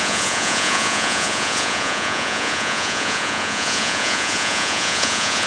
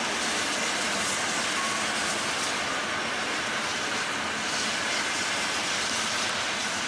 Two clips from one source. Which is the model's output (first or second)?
first